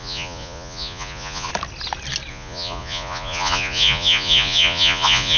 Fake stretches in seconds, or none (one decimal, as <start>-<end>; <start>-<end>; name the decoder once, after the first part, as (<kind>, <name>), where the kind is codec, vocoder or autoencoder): 0.0-1.5 (vocoder, Vocos); 2.3-5.4

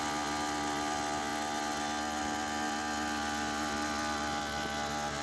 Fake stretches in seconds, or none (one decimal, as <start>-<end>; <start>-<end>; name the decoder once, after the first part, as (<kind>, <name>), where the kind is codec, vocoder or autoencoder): none

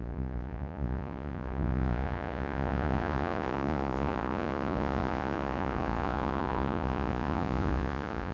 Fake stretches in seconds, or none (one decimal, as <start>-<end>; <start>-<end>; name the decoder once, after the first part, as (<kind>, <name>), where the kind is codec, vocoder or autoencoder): 0.0-8.3 (vocoder, Vocos)

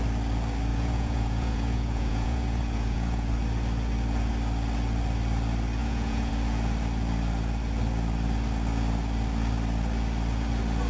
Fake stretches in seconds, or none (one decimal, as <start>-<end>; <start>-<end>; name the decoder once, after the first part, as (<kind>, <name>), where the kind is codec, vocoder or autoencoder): 0.7-3.3 (vocoder, Vocos); 5.8-6.3

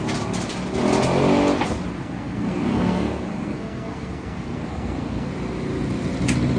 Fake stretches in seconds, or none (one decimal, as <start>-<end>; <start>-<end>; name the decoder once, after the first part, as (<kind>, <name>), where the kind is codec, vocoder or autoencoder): 2.0-5.3 (codec, SNAC)

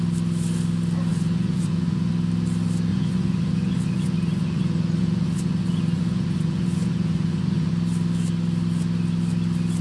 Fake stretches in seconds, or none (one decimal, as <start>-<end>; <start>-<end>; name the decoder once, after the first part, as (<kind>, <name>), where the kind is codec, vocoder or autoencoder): 1.1-2.1 (vocoder, Vocos); 2.9-7.7

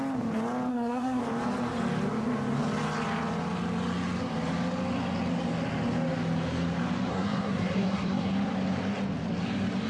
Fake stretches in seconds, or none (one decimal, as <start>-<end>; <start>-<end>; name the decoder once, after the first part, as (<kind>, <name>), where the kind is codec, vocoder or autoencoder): 0.7-1.2 (codec, SNAC); 7.1-8.3